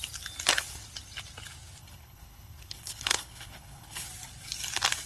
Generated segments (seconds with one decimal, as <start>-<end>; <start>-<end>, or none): 1.8-4.1